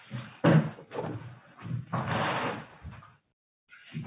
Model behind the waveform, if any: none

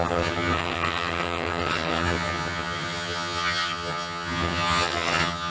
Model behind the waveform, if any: vocoder, HiFi-GAN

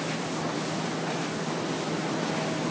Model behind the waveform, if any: none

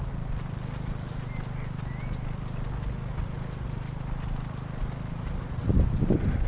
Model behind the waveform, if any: none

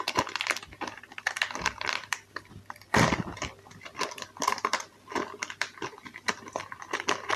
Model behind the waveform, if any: vocoder, BigVGAN v2